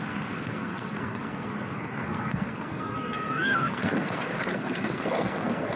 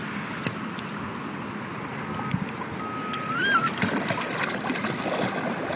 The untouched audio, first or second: second